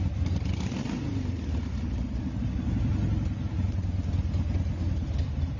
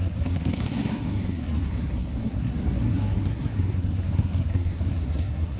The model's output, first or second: second